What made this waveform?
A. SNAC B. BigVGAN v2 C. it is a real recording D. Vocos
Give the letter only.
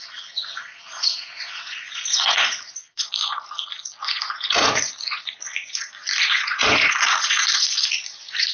D